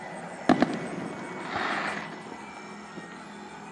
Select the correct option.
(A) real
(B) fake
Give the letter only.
A